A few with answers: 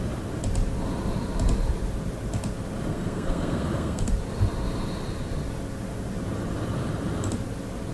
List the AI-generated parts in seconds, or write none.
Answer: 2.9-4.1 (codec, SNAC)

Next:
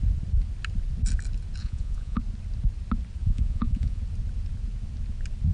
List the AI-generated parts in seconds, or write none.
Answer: 1.6-2.2 (vocoder, Vocos); 3.2-4.0

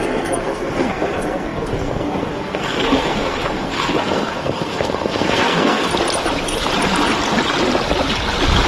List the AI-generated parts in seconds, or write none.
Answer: 0.0-5.9 (codec, SNAC)

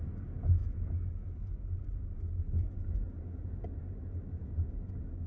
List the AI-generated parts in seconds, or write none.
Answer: none